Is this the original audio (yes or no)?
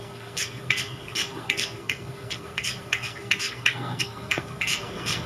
no